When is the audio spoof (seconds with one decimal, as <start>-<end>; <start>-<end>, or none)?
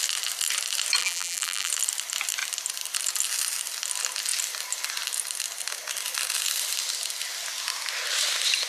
1.0-1.7